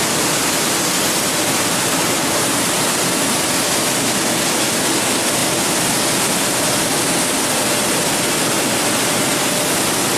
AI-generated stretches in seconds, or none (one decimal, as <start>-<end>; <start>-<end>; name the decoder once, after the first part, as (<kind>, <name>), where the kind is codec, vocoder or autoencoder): none